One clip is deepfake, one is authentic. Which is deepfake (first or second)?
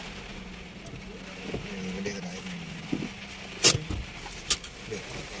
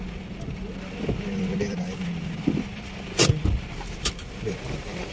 second